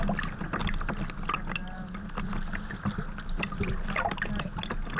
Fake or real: real